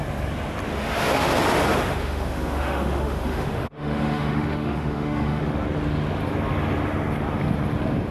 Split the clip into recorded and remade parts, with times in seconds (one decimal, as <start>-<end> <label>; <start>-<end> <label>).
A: 0.0-0.7 recorded; 0.7-1.3 remade; 1.3-2.0 recorded; 2.0-5.4 remade; 5.4-8.1 recorded